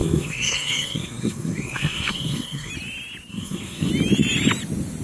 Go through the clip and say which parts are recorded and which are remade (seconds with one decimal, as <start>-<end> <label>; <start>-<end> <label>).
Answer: 0.0-2.7 remade; 2.7-3.3 recorded; 3.3-3.9 remade; 3.9-5.0 recorded